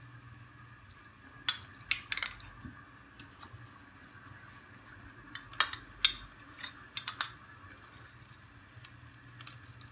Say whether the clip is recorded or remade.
recorded